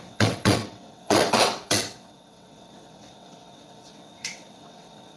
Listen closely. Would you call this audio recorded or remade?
remade